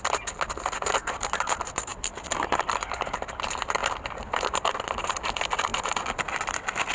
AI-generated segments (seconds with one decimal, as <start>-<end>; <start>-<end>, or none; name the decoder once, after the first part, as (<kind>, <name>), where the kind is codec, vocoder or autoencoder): none

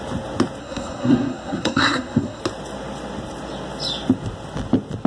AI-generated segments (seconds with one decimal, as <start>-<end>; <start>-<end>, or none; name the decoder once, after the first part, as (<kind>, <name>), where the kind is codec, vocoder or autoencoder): 0.6-2.4 (codec, SNAC)